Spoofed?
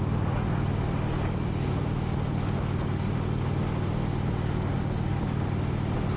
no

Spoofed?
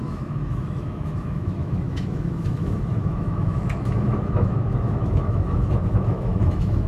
yes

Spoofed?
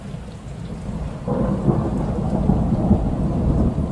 no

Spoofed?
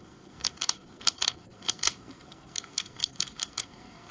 yes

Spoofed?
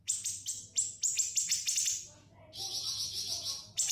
no